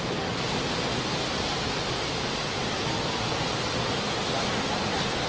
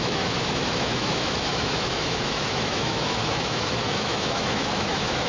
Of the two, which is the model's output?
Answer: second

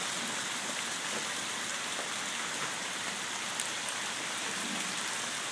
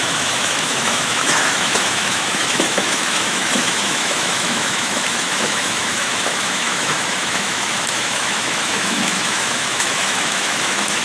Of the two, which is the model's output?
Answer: second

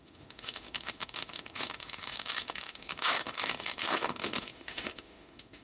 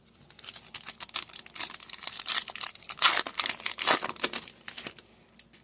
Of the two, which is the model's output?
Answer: first